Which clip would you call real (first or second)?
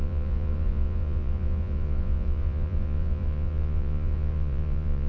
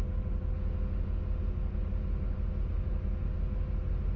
second